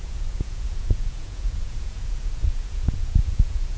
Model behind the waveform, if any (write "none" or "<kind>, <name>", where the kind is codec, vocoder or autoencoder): vocoder, Vocos